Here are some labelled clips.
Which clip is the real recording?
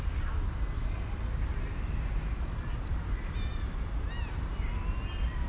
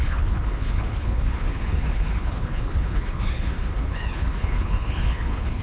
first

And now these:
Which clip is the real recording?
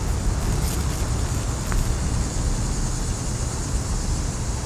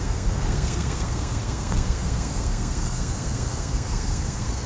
first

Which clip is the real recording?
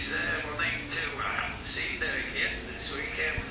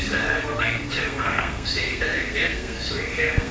first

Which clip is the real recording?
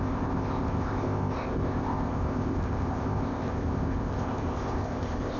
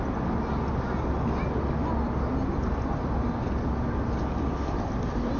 second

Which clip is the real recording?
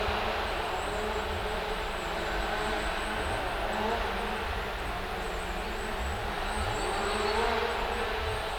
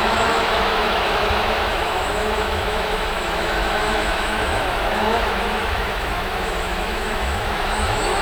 first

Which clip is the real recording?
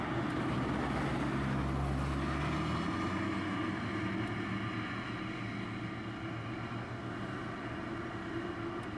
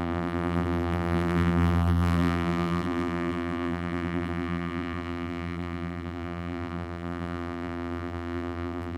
first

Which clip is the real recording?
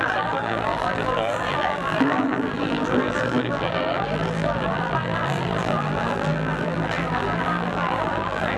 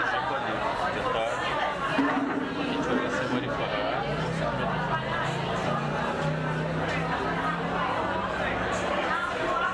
second